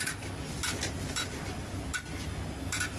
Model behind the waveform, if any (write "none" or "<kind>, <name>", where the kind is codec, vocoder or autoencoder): none